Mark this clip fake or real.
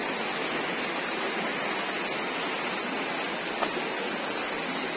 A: real